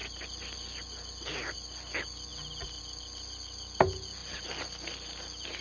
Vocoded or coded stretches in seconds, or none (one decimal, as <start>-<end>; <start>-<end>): none